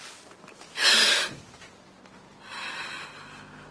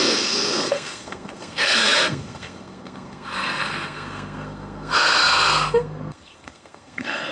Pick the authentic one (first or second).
first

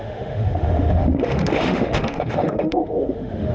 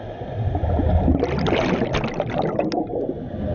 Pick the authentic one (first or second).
second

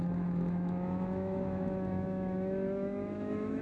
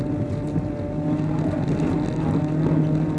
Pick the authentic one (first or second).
second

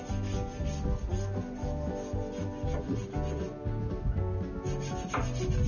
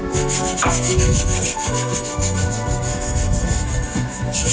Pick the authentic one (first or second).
first